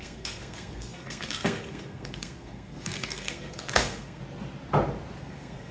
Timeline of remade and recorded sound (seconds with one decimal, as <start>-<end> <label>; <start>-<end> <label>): 0.0-4.2 remade; 4.2-5.2 recorded; 5.2-5.7 remade

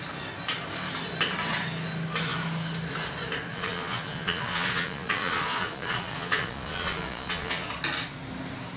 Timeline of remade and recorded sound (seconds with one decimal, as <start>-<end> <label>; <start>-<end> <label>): 0.0-3.5 recorded; 3.5-7.7 remade; 7.7-8.8 recorded